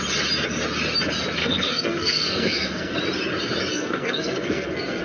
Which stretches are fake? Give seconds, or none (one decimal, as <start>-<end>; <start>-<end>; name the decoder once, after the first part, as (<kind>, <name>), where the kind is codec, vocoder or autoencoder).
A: 1.4-3.0 (codec, SNAC); 3.7-5.0